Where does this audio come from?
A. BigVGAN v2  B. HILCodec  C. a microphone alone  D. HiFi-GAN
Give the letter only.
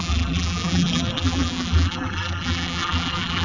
A